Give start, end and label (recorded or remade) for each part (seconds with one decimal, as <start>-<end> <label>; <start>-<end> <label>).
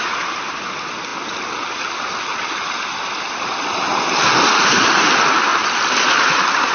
0.0-6.7 recorded